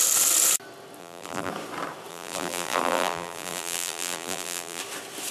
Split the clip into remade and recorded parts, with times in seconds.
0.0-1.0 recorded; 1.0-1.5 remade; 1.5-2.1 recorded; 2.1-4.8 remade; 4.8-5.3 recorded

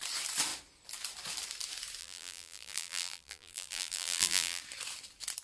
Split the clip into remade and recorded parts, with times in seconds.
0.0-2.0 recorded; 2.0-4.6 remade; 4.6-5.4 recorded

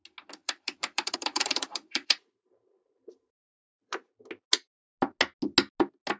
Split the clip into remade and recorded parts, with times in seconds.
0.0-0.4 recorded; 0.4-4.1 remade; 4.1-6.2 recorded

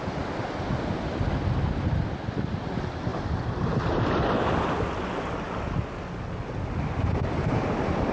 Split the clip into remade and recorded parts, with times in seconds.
0.0-8.1 recorded

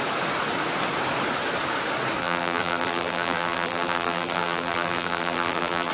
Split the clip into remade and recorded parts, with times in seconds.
0.0-2.2 recorded; 2.2-5.9 remade